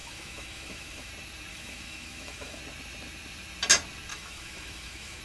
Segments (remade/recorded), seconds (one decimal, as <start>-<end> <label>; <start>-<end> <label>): 0.0-1.1 remade; 1.1-1.5 recorded; 1.5-2.6 remade; 2.6-4.1 recorded; 4.1-5.2 remade

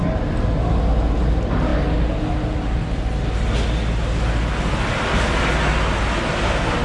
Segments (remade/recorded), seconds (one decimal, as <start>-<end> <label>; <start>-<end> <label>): 0.0-6.8 recorded

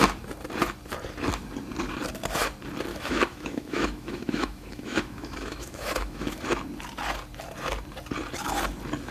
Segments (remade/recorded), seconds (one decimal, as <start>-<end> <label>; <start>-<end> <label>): 0.0-2.9 recorded; 2.9-6.4 remade; 6.4-9.1 recorded

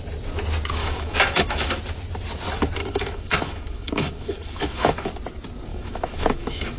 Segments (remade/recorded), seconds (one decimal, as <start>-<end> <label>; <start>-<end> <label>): 0.0-0.8 recorded; 0.8-1.8 remade; 1.8-2.8 recorded; 2.8-5.1 remade; 5.1-5.7 recorded; 5.7-6.8 remade

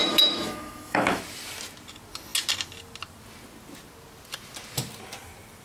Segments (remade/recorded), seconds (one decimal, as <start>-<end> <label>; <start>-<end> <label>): 0.0-1.2 remade; 1.2-5.6 recorded

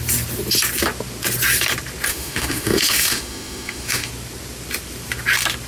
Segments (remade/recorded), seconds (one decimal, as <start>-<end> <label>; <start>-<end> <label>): 0.0-2.1 recorded; 2.1-4.1 remade; 4.1-5.7 recorded